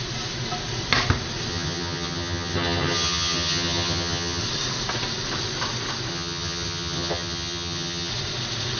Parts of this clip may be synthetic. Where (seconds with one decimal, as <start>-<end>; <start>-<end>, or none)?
1.5-4.4; 6.1-8.1